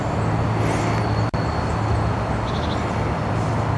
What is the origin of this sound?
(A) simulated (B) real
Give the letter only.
B